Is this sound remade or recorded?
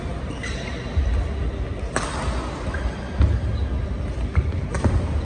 recorded